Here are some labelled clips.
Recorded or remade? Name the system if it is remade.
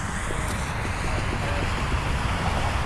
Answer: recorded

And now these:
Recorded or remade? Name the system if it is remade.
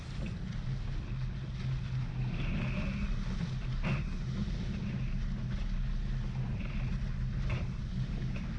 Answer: recorded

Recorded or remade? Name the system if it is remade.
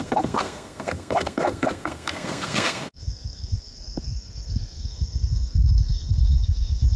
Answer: remade, codec, SNAC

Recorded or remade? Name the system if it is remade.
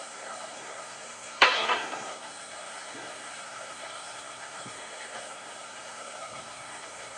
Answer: remade, codec, SNAC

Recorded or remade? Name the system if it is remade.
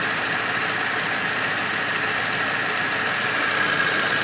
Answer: recorded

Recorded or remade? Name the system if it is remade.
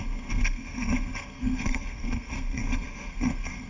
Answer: remade, codec, SNAC